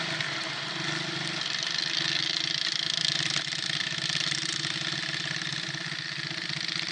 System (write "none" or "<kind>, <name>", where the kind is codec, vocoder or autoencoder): none